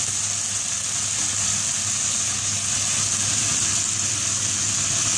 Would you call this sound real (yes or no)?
yes